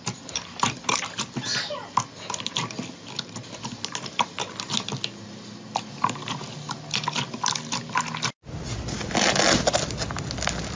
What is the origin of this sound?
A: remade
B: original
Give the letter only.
B